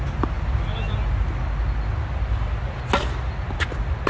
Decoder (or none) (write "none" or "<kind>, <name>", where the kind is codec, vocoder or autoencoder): none